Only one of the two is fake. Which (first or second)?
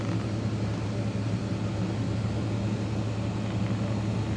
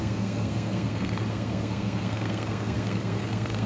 second